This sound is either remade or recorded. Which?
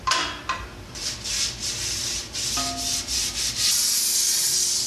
recorded